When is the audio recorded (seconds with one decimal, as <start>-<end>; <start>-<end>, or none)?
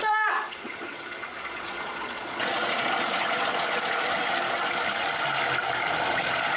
4.9-6.1